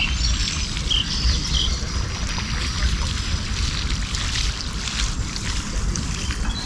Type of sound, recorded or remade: recorded